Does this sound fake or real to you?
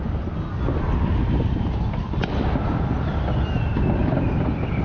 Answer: real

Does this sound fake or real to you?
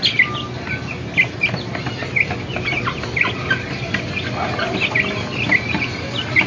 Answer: real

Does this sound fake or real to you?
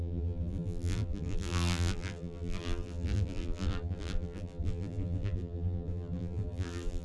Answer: fake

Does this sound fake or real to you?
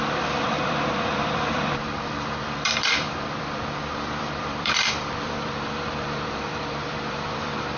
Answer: fake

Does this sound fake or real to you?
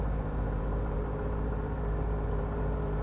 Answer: fake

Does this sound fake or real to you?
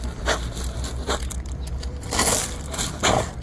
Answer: fake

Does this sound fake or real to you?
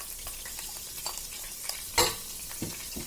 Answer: real